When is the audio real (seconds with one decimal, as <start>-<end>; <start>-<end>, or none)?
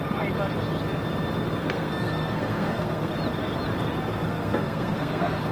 0.0-1.6; 3.1-4.1